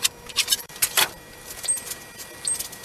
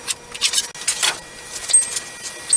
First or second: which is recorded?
second